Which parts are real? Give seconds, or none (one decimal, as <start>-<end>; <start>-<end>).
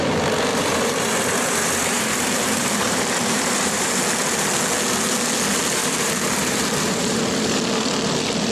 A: 0.0-0.5; 4.0-5.8; 7.2-8.5